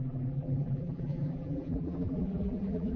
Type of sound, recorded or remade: remade